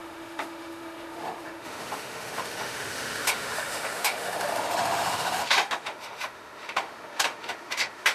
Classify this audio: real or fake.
fake